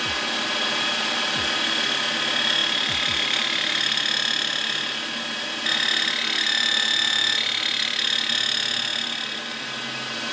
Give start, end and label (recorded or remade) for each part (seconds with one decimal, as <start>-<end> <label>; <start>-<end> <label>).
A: 0.0-10.3 recorded

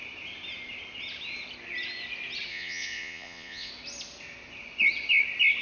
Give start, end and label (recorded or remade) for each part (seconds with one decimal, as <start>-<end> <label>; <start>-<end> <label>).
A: 0.0-2.5 recorded; 2.5-3.7 remade; 3.7-5.6 recorded

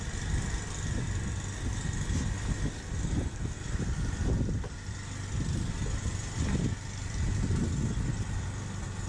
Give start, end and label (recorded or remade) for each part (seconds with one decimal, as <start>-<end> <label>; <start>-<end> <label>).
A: 0.0-9.1 recorded

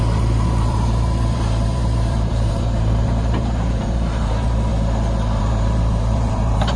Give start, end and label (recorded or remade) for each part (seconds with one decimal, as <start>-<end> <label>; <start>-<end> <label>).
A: 0.0-4.7 remade; 4.7-5.4 recorded; 5.4-6.8 remade

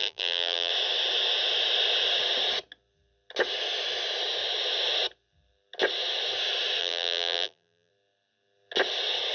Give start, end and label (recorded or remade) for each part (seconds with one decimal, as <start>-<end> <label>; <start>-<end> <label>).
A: 0.0-0.7 remade; 0.7-6.8 recorded; 6.8-7.9 remade; 7.9-9.3 recorded

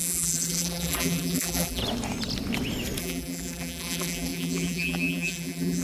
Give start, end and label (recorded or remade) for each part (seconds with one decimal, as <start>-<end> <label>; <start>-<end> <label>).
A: 0.0-1.8 remade; 1.8-3.0 recorded; 3.0-5.8 remade

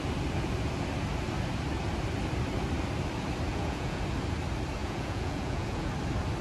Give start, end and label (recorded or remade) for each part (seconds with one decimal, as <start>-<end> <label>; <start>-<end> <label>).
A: 0.0-3.5 recorded; 3.5-4.0 remade; 4.0-4.8 recorded; 4.8-5.9 remade; 5.9-6.4 recorded